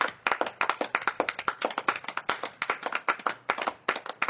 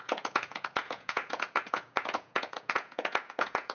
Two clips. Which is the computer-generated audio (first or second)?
second